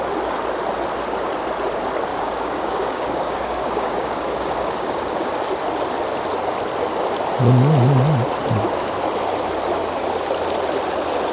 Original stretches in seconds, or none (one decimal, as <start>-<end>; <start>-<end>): 0.0-2.1; 5.5-11.3